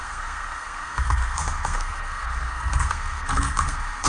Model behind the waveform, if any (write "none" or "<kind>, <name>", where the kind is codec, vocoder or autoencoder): codec, SNAC